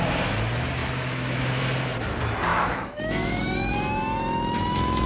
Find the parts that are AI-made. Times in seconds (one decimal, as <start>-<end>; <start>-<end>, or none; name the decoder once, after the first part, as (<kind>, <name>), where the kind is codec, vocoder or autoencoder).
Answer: 0.8-1.6 (autoencoder, DAC-VAE); 2.5-5.1